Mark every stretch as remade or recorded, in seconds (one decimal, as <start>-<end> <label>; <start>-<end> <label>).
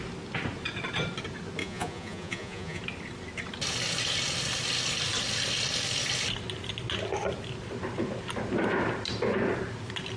0.0-1.6 recorded; 1.6-2.8 remade; 2.8-10.2 recorded